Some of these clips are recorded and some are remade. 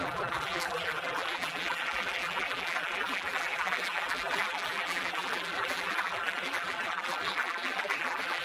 remade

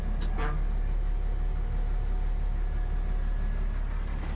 recorded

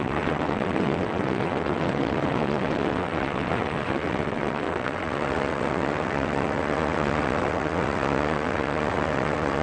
remade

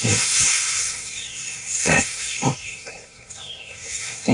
remade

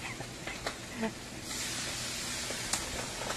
recorded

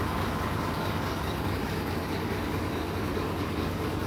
remade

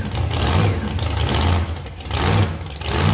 recorded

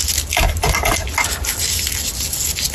recorded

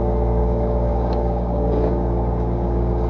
remade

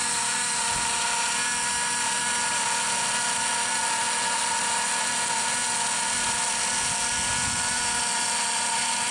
recorded